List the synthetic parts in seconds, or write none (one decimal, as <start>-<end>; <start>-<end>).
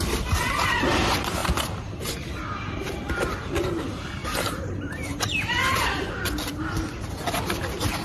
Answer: 1.4-2.1; 4.2-6.1